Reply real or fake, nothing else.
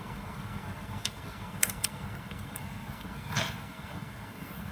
fake